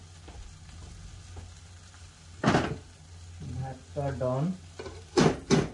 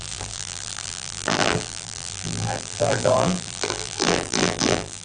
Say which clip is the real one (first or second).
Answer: first